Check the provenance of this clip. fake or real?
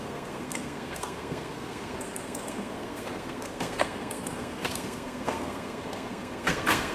fake